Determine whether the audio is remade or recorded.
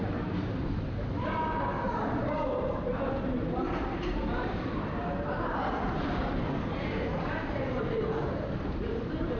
remade